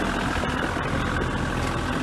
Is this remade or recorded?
recorded